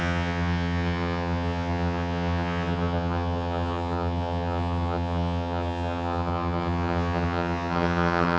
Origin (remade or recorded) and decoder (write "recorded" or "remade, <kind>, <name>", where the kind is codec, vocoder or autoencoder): remade, vocoder, HiFi-GAN